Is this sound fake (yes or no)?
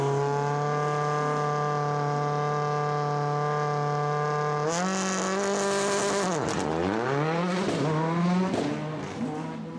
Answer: no